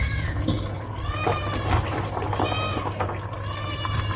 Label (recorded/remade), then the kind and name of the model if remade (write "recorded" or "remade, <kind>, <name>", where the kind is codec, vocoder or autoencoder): recorded